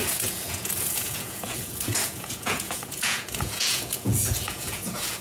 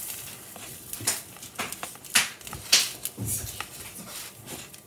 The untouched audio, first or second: second